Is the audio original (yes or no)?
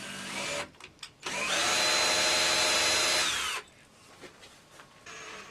yes